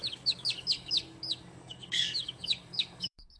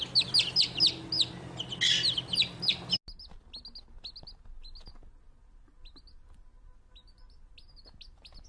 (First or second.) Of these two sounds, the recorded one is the second